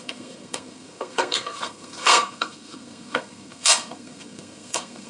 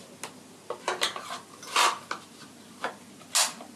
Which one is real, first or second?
second